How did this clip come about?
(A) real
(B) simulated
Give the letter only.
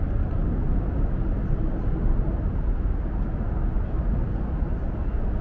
A